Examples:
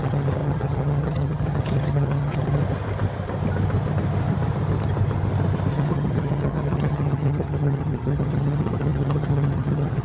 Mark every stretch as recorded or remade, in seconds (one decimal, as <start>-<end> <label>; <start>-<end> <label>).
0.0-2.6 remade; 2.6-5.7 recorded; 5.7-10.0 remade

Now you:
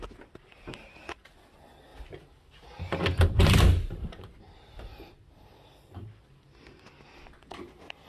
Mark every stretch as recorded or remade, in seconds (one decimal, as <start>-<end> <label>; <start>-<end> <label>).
0.0-8.1 recorded

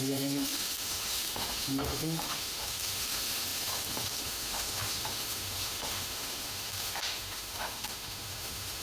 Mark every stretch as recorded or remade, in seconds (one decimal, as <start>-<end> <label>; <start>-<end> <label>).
0.0-8.8 remade

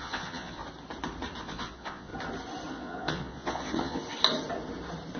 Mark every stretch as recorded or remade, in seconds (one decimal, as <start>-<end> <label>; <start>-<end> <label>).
0.0-0.6 remade; 0.6-1.4 recorded; 1.4-2.1 remade; 2.1-2.7 recorded; 2.7-4.0 remade; 4.0-5.2 recorded

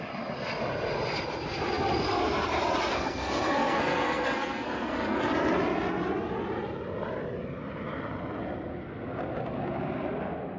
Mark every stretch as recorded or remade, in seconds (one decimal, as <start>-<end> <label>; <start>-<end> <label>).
0.0-2.9 recorded; 2.9-5.2 remade; 5.2-10.6 recorded